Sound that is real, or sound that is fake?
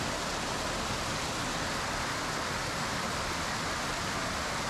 real